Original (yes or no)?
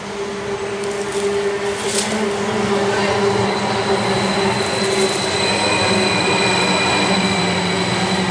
yes